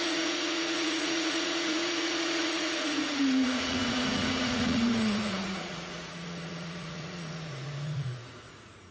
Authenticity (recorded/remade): remade